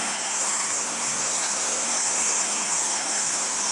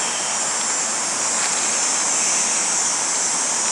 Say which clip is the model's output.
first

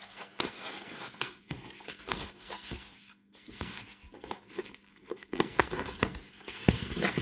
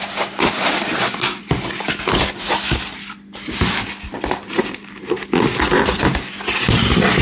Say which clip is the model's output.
first